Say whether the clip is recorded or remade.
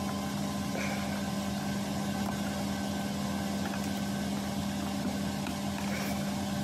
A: recorded